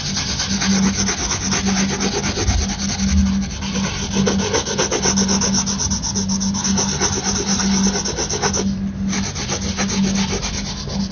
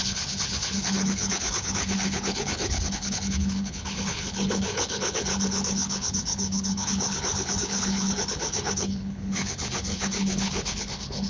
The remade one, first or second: second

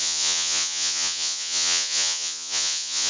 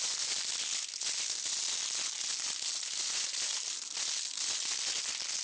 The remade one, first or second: first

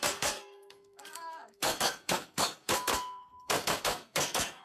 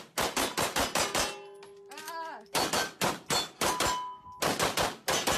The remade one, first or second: first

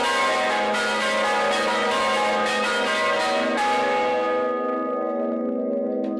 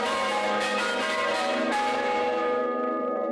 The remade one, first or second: second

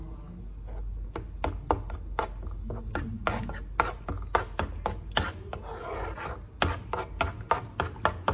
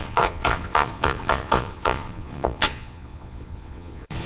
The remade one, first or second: second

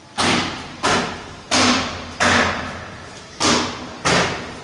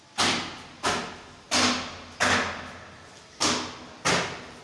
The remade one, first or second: first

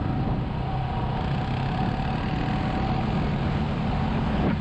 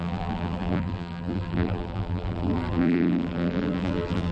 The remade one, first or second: second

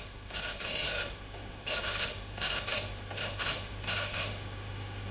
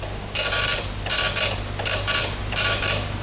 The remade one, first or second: first